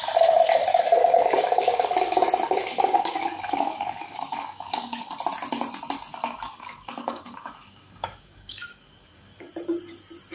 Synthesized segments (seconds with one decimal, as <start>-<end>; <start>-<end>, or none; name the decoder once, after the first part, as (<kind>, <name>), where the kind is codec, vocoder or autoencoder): 0.7-1.9 (codec, DAC); 2.7-5.1; 6.1-9.5